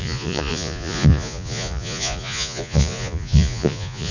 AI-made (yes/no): yes